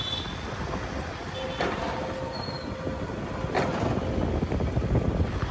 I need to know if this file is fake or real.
real